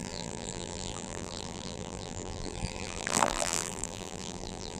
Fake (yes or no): yes